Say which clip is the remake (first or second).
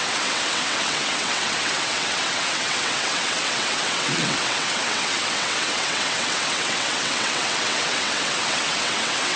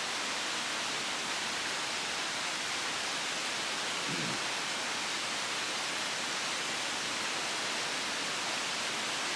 first